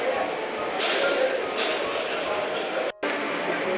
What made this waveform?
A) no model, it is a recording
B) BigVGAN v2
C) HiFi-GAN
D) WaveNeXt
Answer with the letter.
A